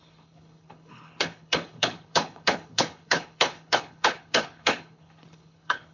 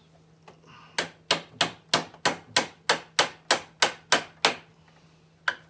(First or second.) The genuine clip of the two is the second